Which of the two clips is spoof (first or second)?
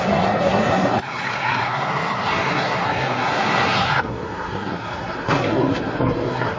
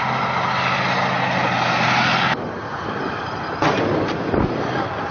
first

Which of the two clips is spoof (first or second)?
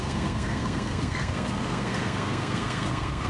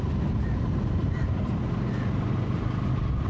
first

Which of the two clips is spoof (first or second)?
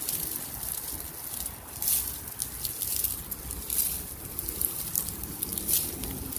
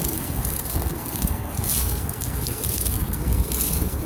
second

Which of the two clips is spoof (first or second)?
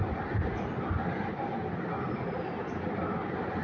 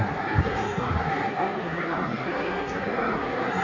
second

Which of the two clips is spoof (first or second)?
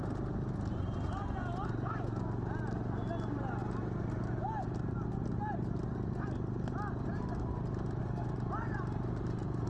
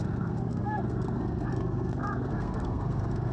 second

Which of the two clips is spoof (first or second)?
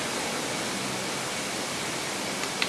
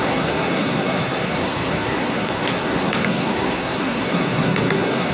second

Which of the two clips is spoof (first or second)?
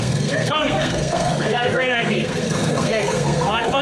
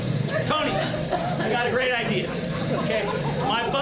first